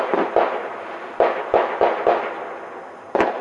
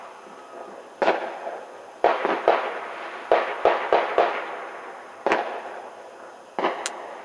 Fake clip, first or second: first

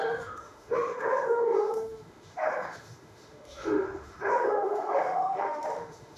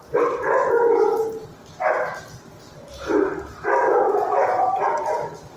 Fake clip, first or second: first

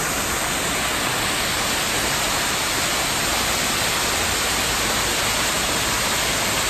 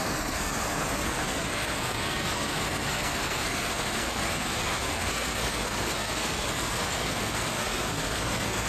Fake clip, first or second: second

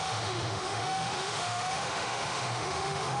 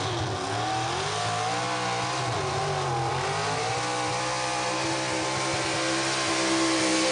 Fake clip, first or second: first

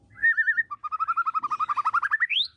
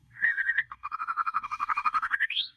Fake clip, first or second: second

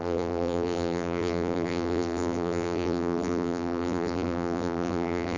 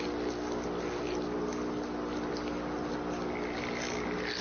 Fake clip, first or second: first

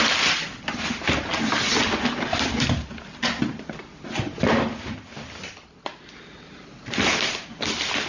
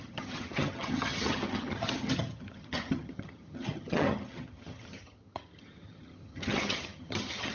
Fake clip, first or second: second